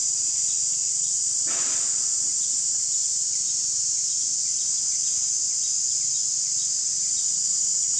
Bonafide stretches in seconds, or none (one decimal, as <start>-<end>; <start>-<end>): 1.2-3.0; 3.8-5.4; 6.7-8.0